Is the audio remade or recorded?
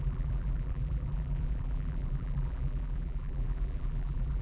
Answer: remade